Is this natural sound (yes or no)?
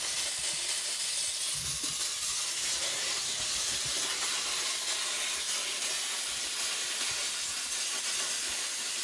yes